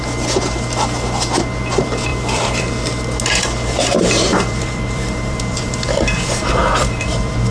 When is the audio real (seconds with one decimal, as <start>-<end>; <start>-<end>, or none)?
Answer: 0.0-2.1; 2.6-4.3; 5.7-6.6; 7.1-7.5

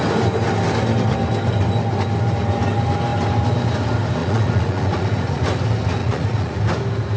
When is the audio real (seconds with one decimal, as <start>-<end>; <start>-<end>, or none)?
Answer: 0.0-4.2; 5.4-6.0; 6.6-7.2